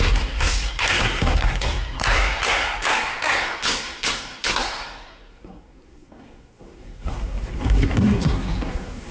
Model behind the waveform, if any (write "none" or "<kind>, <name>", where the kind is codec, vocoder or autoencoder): codec, SNAC